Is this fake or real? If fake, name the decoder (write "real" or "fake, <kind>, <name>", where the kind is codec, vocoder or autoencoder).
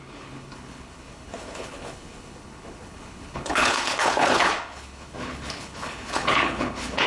fake, codec, HILCodec